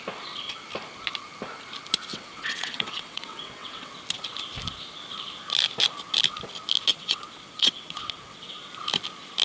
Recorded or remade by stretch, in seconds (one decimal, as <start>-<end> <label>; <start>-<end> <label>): 0.0-2.1 recorded; 2.1-3.9 remade; 3.9-6.9 recorded; 6.9-8.7 remade; 8.7-9.4 recorded